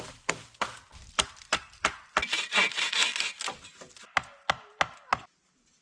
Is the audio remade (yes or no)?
no